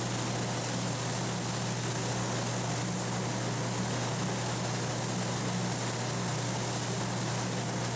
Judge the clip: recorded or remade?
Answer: recorded